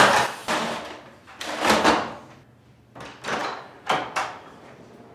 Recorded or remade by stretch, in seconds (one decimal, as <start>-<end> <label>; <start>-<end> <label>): 0.0-0.4 recorded; 0.4-1.8 remade; 1.8-5.1 recorded